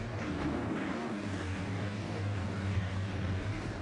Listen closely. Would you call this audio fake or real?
fake